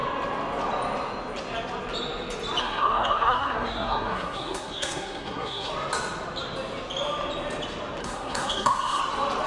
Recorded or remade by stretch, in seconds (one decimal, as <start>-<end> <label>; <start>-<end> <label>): 0.0-2.6 recorded; 2.6-5.7 remade; 5.7-8.0 recorded; 8.0-9.0 remade; 9.0-9.5 recorded